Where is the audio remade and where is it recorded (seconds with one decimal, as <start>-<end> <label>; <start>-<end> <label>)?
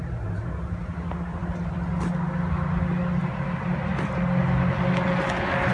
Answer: 0.0-5.7 recorded